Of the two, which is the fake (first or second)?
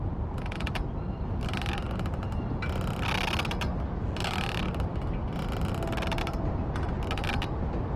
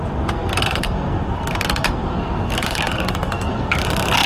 second